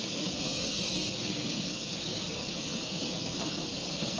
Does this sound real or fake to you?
fake